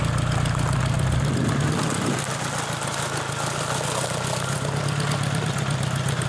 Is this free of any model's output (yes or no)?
yes